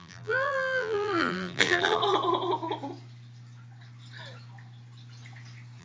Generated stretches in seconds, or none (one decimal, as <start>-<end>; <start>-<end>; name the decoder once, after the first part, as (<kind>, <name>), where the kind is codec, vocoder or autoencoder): 0.0-2.0 (vocoder, BigVGAN v2)